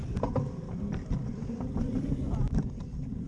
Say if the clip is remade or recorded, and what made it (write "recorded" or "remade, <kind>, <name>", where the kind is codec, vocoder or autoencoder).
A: remade, vocoder, BigVGAN v2